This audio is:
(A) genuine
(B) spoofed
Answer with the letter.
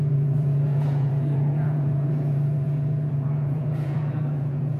B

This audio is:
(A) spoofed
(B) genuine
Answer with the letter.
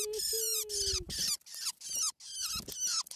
B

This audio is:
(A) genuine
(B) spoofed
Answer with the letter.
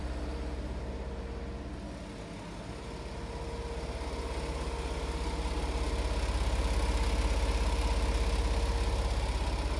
A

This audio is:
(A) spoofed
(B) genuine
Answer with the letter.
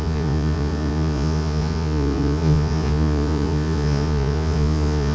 A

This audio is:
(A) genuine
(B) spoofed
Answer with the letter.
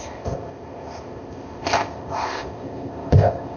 B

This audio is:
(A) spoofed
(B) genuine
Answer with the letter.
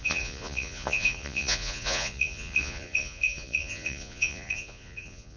A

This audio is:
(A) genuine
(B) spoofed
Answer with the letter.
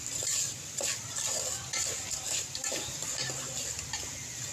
B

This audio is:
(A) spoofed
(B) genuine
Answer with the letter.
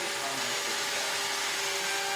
B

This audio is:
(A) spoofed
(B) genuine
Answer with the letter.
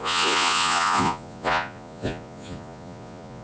A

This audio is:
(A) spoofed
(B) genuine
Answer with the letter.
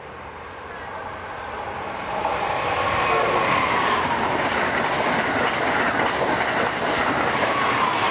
B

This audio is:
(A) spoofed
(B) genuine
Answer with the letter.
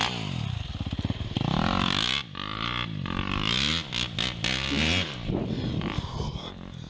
B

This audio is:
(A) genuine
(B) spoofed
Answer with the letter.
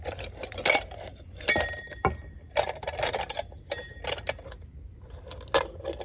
A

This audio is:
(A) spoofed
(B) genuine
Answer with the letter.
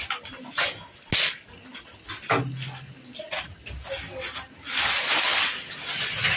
B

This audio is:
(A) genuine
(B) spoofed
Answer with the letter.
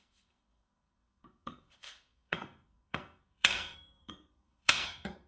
B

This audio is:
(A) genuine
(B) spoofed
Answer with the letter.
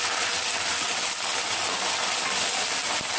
A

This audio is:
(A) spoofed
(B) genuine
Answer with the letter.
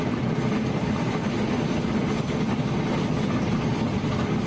B